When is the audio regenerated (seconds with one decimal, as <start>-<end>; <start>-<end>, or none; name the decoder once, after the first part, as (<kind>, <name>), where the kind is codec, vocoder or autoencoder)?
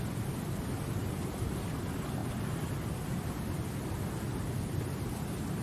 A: none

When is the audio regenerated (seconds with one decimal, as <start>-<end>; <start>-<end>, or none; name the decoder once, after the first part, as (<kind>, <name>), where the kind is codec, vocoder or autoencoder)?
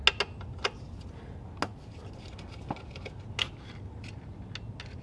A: none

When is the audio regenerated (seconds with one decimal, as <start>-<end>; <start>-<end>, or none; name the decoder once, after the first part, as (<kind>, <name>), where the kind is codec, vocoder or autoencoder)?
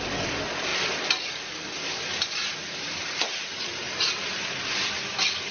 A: none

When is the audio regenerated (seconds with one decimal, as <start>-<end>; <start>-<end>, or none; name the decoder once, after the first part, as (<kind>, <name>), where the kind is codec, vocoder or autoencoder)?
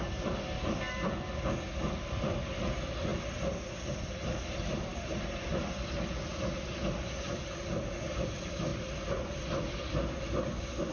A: none